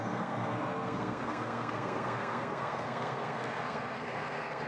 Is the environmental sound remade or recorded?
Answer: remade